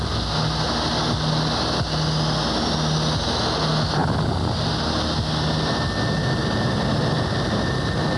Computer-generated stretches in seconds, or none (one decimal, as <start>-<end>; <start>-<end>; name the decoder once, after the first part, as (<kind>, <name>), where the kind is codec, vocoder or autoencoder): none